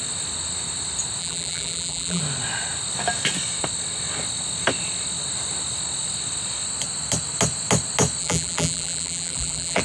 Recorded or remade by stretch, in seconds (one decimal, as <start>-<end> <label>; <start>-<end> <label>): 0.0-1.2 recorded; 1.2-2.2 remade; 2.2-8.2 recorded; 8.2-9.8 remade